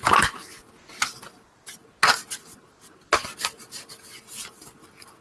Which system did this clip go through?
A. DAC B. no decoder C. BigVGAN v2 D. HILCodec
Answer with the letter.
C